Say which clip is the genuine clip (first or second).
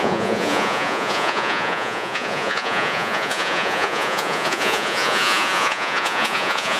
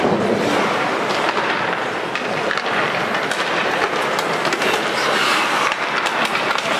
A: second